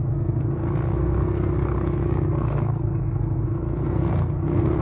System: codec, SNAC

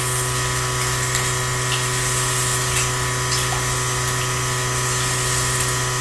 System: none